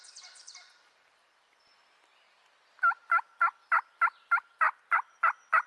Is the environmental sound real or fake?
real